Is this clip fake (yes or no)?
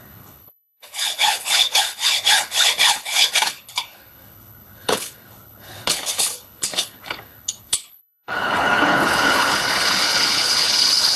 yes